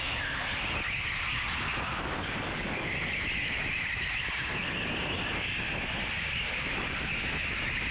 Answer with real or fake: real